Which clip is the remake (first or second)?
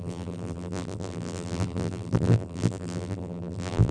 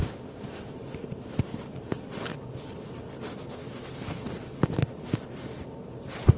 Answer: first